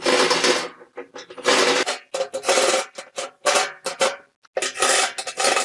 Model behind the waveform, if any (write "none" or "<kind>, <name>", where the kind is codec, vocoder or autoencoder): none